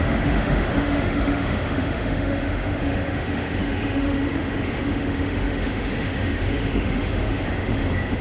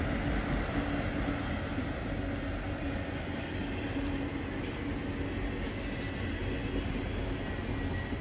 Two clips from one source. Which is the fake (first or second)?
first